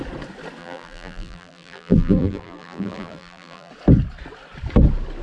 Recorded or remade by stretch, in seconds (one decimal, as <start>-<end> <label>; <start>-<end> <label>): 0.0-0.6 recorded; 0.6-3.7 remade; 3.7-5.2 recorded